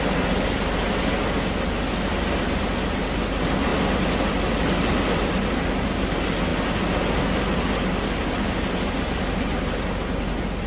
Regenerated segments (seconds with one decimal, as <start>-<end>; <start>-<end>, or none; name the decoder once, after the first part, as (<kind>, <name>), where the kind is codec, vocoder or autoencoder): none